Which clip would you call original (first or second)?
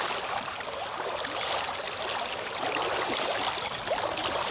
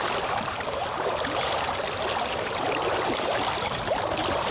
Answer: first